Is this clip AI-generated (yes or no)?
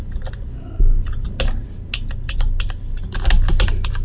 no